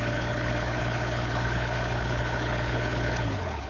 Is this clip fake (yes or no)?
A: yes